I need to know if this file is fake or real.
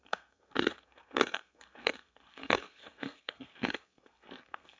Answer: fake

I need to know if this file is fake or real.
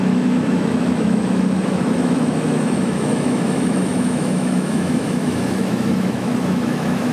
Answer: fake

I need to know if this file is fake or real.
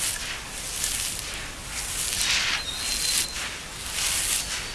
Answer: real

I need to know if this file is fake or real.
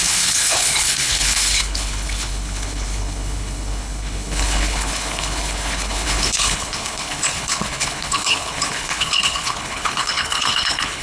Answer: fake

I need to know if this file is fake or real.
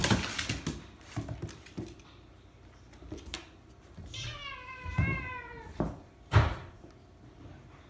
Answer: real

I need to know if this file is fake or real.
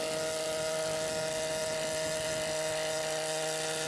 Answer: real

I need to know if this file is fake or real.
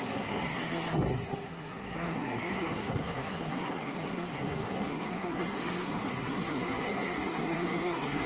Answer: fake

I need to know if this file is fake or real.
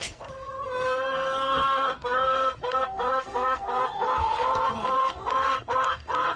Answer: fake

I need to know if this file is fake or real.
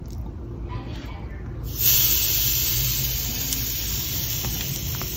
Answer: real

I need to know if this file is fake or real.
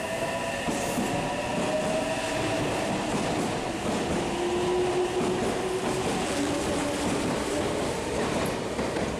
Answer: real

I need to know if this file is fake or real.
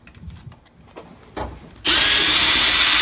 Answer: real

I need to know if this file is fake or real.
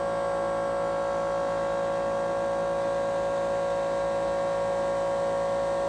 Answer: real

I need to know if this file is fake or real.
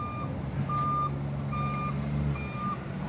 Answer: real